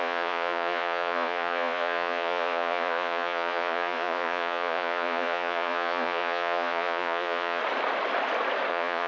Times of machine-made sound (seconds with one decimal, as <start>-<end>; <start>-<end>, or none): 0.0-7.6; 8.7-9.1